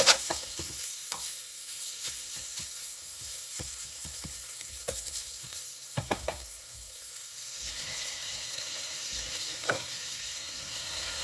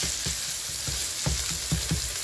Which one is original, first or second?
second